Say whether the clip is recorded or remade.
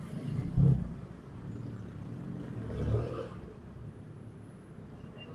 recorded